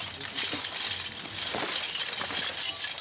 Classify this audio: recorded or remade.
recorded